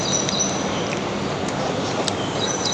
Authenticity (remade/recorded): recorded